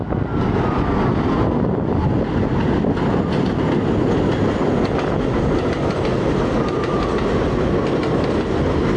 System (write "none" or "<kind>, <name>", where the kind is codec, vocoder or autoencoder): none